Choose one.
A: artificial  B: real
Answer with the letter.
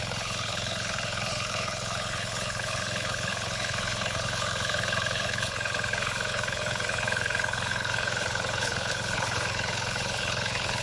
A